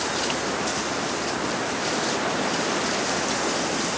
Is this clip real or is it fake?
real